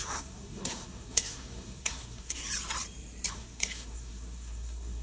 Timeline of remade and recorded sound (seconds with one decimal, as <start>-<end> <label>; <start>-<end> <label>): 0.0-2.4 remade; 2.4-3.3 recorded; 3.3-5.0 remade